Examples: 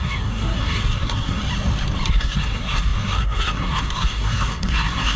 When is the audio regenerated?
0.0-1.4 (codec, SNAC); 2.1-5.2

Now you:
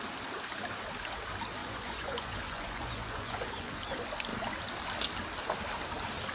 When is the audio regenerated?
1.6-3.7 (vocoder, Vocos)

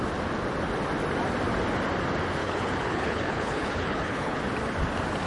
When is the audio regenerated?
2.4-4.4 (codec, HILCodec)

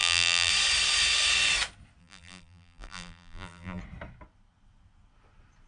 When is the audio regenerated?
0.0-0.5 (vocoder, BigVGAN v2); 2.0-3.8

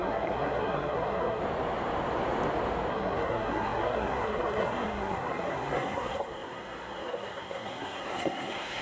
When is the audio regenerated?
0.0-1.4 (codec, SNAC); 2.9-8.8

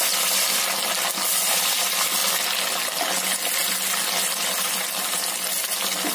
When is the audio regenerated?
none

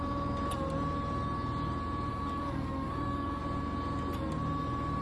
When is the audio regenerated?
2.1-3.4 (codec, DAC)